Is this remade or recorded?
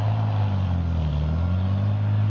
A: recorded